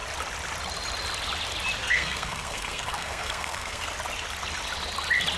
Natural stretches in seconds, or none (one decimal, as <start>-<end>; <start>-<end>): 0.0-1.8; 3.9-5.4